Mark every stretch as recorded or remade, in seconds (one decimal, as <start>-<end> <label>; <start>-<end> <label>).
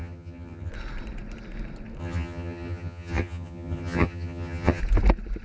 0.0-0.7 remade; 0.7-2.0 recorded; 2.0-4.8 remade; 4.8-5.4 recorded